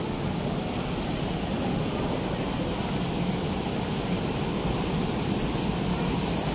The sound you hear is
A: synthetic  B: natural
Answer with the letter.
B